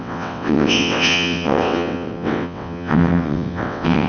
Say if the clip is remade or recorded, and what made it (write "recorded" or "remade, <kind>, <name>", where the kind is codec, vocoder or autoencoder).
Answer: remade, vocoder, WaveNeXt